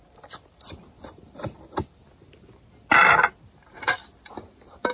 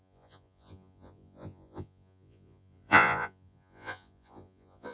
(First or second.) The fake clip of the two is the second